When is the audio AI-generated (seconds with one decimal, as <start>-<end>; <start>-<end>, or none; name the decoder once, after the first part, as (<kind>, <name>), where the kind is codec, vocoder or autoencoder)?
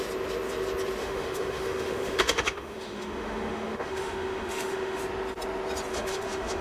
1.0-5.0 (autoencoder, DAC-VAE); 5.9-6.6